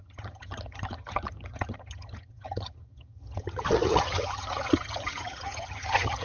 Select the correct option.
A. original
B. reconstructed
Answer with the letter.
B